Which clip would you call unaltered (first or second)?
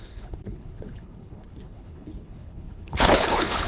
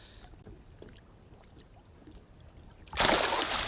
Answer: second